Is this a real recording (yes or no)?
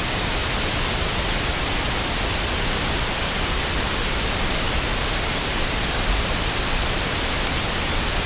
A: yes